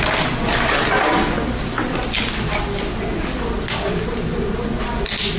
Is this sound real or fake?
real